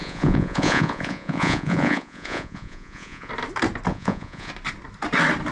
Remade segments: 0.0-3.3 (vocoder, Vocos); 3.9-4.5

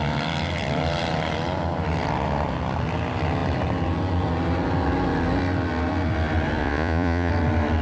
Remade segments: 6.6-7.3 (vocoder, Vocos)

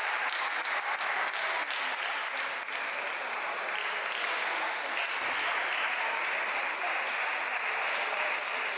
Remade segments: none